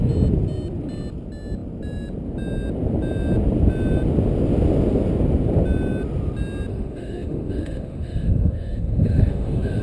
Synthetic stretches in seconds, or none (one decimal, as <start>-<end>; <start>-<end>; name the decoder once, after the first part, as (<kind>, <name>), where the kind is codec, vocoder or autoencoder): 6.7-9.8 (autoencoder, DAC-VAE)